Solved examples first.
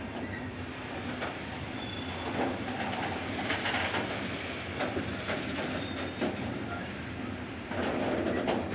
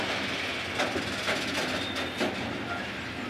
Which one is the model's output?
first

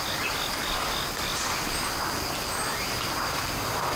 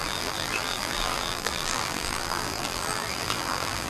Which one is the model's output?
second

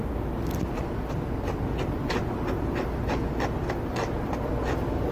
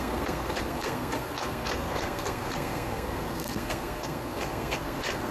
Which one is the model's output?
second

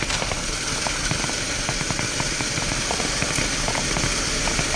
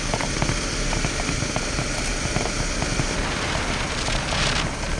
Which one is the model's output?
first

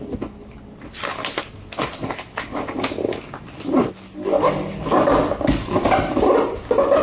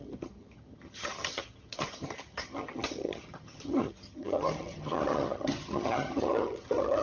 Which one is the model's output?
second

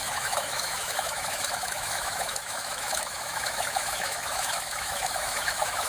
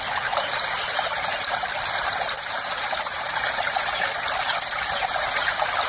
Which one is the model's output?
first